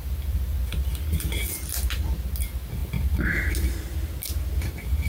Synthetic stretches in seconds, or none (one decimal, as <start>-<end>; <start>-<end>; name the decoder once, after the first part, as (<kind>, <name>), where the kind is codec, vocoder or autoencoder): 0.0-1.2 (vocoder, BigVGAN v2); 2.8-3.5